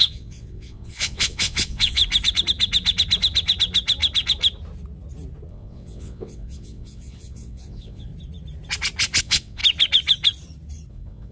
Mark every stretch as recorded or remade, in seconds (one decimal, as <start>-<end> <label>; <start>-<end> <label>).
0.0-2.0 remade; 2.0-5.5 recorded; 5.5-8.1 remade; 8.1-9.2 recorded; 9.2-9.6 remade; 9.6-10.9 recorded; 10.9-11.3 remade